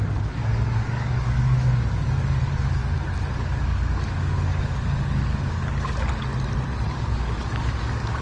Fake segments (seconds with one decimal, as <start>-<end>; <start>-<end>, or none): 0.0-2.8; 3.4-6.3; 6.9-8.2